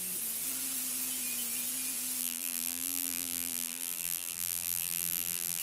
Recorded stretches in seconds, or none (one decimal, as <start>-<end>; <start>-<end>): 0.0-2.2